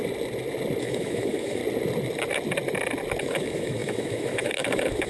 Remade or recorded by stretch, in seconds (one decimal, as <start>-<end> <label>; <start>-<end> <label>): 0.0-0.8 recorded; 0.8-1.6 remade; 1.6-3.2 recorded; 3.2-5.1 remade